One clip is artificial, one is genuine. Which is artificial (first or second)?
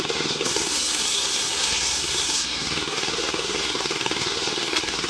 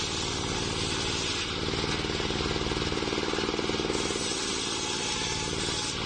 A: first